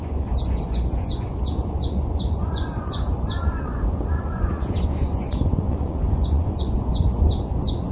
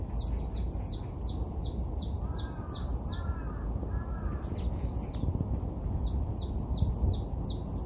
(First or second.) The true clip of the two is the second